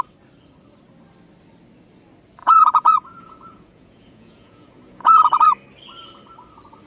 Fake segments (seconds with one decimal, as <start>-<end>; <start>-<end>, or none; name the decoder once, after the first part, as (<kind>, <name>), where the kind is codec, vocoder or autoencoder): 2.4-5.4 (vocoder, Vocos)